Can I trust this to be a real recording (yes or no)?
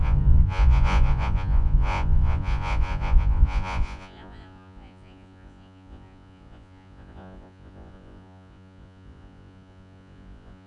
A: no